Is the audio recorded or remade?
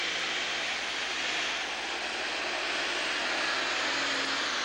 recorded